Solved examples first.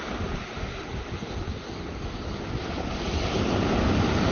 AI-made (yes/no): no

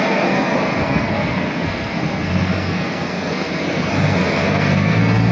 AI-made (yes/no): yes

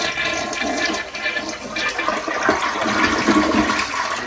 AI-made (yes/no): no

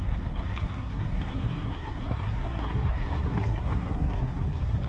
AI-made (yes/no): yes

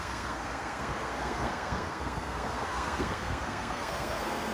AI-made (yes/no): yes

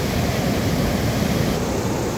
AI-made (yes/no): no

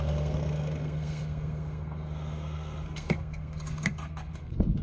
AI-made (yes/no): yes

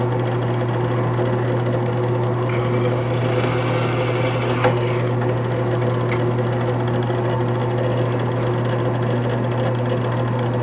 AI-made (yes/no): no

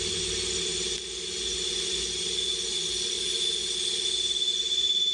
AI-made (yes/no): no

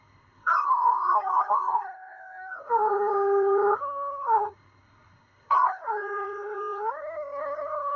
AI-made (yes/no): yes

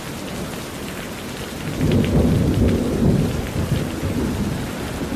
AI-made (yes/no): no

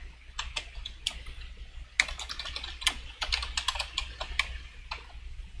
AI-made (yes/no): no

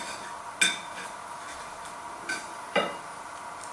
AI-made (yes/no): no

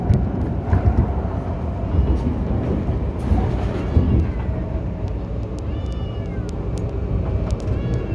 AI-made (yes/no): no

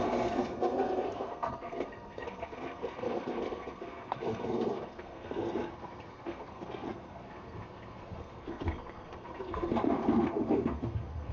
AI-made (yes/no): yes